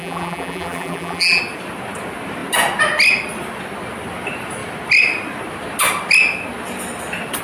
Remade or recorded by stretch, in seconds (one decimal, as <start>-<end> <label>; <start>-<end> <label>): 0.0-1.4 remade; 1.4-7.4 recorded